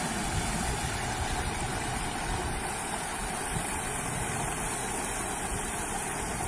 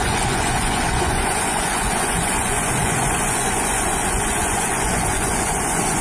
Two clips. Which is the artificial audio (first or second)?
second